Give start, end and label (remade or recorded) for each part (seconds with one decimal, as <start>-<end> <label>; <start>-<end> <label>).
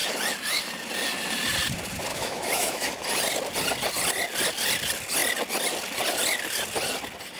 0.0-2.1 recorded; 2.1-2.9 remade; 2.9-7.4 recorded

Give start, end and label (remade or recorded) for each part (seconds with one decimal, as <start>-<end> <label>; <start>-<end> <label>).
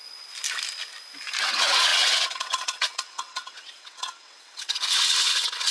0.0-1.4 recorded; 1.4-5.7 remade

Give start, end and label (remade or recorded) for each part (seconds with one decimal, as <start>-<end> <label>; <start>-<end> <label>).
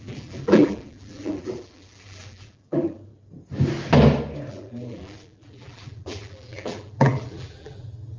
0.0-3.1 remade; 3.1-4.5 recorded; 4.5-8.2 remade